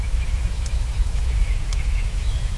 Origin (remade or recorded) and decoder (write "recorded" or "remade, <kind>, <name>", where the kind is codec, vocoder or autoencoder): remade, autoencoder, DAC-VAE